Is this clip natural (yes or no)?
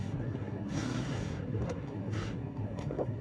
no